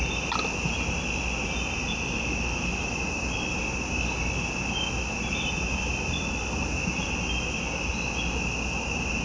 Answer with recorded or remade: recorded